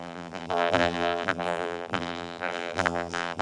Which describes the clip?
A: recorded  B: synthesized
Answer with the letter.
B